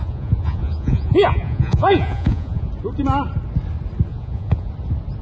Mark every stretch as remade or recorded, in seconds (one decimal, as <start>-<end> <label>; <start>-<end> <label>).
0.0-2.7 remade; 2.7-4.1 recorded; 4.1-4.7 remade; 4.7-5.2 recorded